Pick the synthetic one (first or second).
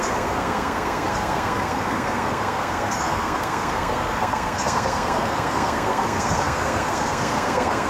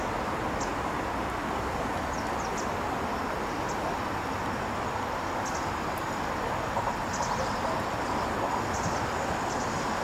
first